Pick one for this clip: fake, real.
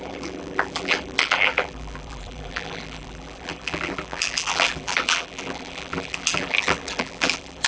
fake